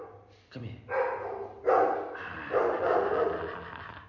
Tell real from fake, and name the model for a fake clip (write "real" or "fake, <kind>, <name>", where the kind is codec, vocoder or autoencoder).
real